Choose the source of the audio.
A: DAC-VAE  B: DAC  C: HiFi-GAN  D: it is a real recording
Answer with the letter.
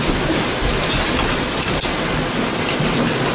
D